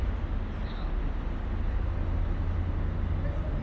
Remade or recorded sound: recorded